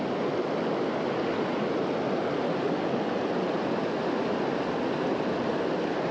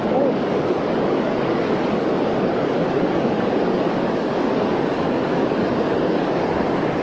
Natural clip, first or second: first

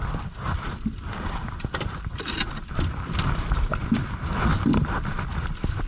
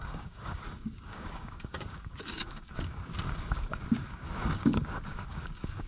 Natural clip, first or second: first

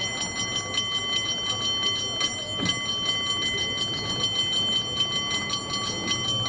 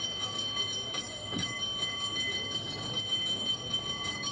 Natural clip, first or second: first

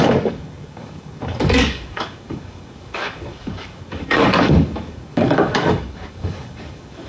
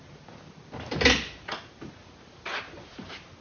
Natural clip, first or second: second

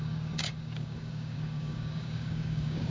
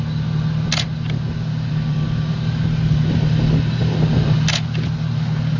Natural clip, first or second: second